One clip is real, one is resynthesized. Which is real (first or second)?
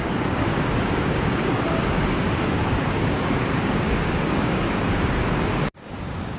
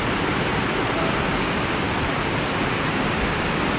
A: second